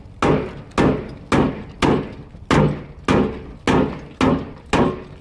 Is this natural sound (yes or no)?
yes